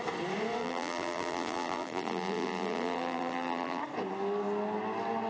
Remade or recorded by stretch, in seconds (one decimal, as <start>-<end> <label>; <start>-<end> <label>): 0.0-0.6 recorded; 0.6-3.8 remade; 3.8-5.3 recorded